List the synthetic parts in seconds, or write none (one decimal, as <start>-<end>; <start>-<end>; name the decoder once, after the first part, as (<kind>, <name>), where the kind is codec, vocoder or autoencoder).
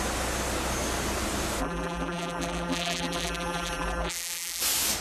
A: 1.6-4.6 (vocoder, BigVGAN v2)